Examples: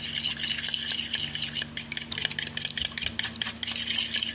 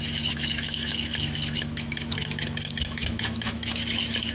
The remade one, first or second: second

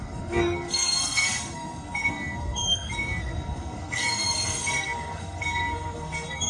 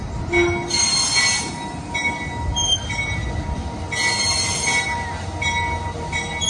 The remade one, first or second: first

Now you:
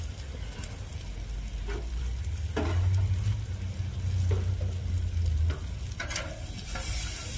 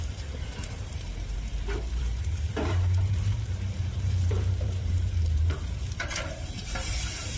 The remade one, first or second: second